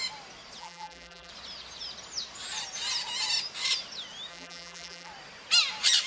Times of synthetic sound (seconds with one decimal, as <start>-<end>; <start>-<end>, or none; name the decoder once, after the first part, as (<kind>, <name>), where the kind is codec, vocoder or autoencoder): 0.6-1.3 (vocoder, BigVGAN v2); 4.3-5.1